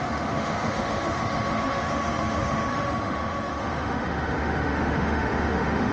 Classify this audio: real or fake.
fake